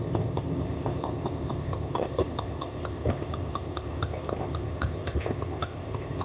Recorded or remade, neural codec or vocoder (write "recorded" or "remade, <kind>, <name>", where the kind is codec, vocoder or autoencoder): remade, codec, ZipCodec